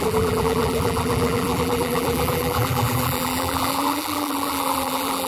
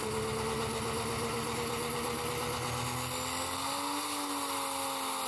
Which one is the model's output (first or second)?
first